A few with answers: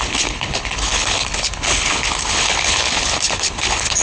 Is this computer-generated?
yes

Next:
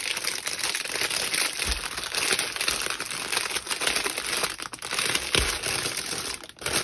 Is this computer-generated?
no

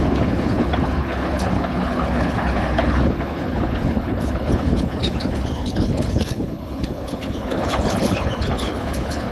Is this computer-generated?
yes